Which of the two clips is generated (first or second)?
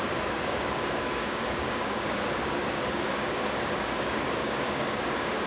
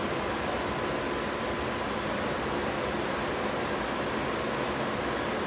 first